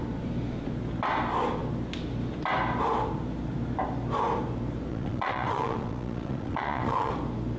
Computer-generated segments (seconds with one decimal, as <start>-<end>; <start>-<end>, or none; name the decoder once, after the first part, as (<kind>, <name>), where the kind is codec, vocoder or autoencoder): 4.9-7.1 (vocoder, Vocos)